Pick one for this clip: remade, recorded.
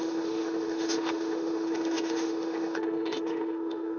remade